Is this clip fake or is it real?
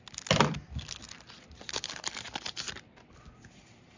real